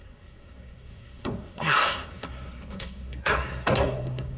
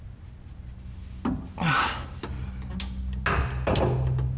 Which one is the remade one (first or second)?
first